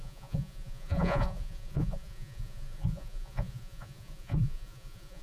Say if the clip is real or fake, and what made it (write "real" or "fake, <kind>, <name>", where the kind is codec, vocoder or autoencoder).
fake, vocoder, Vocos